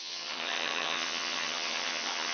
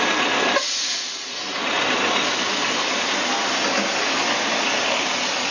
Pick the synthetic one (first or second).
first